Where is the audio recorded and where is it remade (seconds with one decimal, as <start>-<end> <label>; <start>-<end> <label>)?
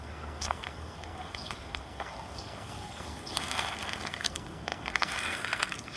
0.0-6.0 remade